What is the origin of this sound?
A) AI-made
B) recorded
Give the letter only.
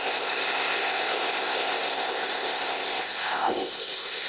A